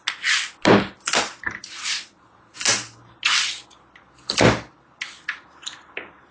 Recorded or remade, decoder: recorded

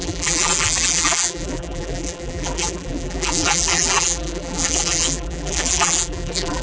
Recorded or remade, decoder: remade, vocoder, BigVGAN v2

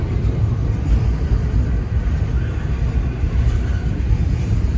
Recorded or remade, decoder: recorded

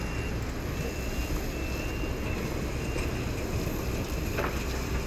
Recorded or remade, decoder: recorded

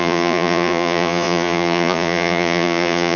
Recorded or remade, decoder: remade, vocoder, Vocos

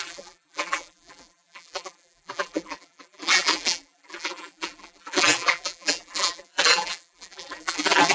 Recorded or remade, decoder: remade, vocoder, BigVGAN v2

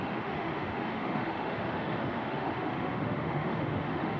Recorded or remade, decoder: remade, autoencoder, DAC-VAE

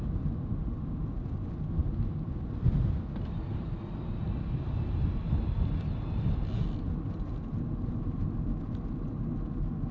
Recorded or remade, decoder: recorded